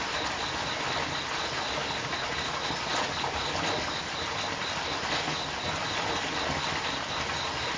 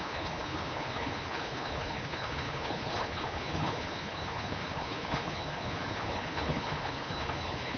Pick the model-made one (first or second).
second